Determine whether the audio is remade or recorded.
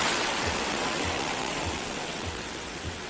remade